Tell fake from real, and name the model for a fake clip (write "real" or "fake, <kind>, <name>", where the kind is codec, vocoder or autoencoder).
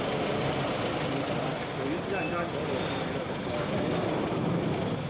real